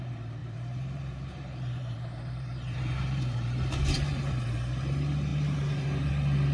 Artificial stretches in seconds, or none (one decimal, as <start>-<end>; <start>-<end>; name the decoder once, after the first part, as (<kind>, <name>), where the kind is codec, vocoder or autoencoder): 0.4-4.3 (vocoder, BigVGAN v2); 5.3-6.1